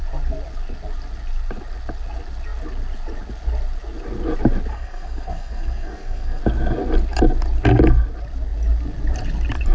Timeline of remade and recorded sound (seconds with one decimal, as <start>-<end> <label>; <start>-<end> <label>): 0.0-4.7 recorded; 4.7-6.4 remade; 6.4-9.7 recorded